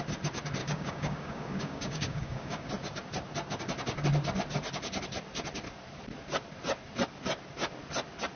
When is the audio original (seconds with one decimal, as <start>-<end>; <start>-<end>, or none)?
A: 0.0-0.6; 2.7-8.4